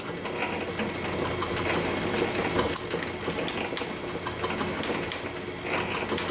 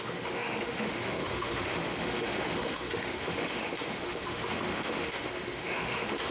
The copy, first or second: second